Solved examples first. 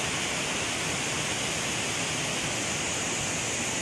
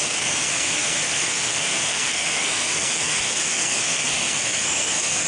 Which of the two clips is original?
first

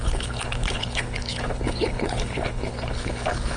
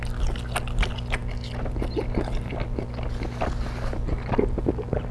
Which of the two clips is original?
second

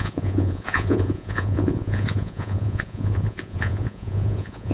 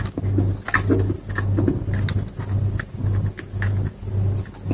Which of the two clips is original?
second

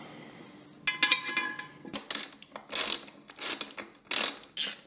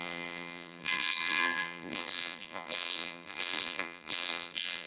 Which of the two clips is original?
first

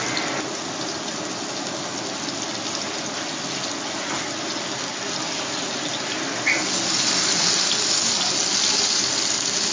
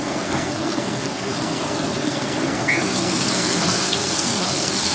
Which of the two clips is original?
first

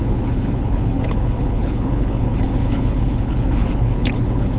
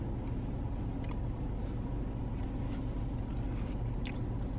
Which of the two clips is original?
second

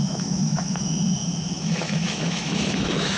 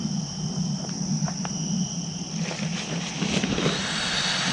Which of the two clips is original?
second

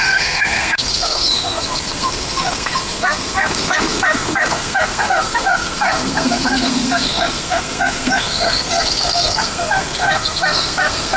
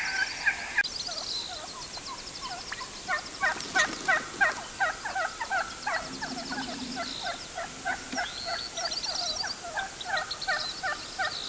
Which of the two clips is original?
second